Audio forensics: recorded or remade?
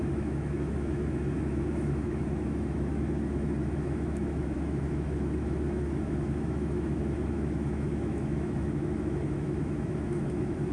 remade